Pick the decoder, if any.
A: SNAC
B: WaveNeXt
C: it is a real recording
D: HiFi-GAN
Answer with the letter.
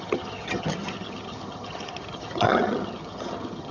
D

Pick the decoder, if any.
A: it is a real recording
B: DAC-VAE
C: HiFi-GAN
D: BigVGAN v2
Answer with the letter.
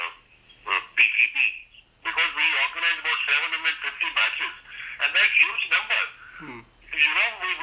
A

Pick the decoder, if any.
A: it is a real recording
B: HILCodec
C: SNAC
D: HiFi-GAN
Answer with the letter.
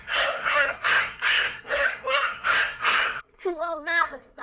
C